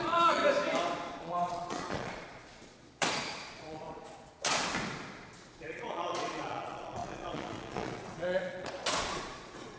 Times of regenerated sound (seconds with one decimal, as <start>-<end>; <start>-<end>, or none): 0.0-0.4; 1.1-4.6; 5.6-9.8